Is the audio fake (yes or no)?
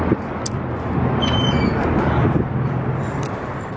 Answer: no